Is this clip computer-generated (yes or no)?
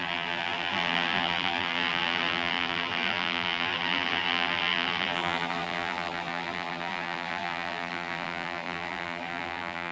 yes